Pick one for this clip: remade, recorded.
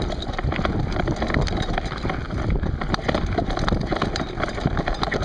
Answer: recorded